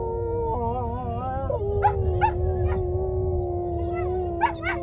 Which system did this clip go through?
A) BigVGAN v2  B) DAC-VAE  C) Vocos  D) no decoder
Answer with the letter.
D